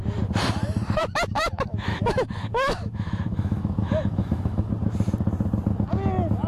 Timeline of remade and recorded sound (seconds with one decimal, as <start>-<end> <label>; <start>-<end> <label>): 0.0-1.0 recorded; 1.0-4.7 remade; 4.7-6.5 recorded